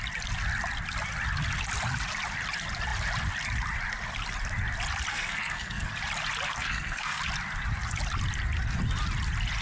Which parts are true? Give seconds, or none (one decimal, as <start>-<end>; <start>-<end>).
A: 0.0-5.1; 5.9-6.5; 7.2-9.6